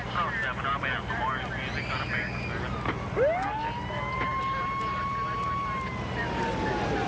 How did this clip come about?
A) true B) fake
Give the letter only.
A